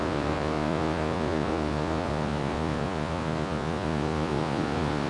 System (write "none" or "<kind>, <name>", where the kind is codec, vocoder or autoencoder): vocoder, Vocos